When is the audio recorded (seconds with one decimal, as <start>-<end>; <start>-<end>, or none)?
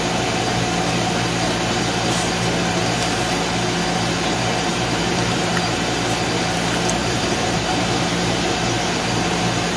0.0-4.7; 5.5-7.0; 8.4-9.8